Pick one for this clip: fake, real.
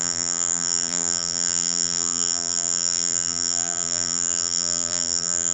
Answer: fake